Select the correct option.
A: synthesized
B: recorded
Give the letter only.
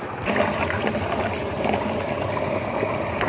B